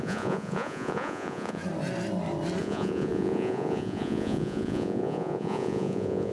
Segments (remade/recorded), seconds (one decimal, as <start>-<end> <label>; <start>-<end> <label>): 0.0-1.6 remade; 1.6-2.6 recorded; 2.6-6.3 remade